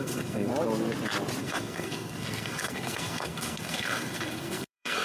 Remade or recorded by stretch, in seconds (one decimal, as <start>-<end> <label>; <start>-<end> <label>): 0.0-0.5 remade; 0.5-1.4 recorded; 1.4-5.0 remade